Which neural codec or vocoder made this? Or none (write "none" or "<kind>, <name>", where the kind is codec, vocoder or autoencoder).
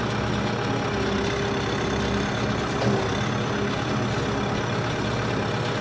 none